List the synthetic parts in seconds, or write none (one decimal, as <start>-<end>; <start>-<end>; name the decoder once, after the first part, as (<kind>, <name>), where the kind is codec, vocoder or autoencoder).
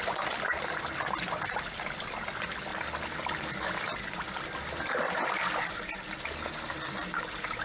none